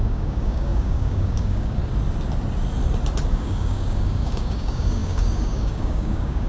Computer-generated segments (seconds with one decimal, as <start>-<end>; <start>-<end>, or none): 0.0-1.8; 3.3-6.5